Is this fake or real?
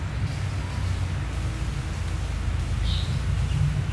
real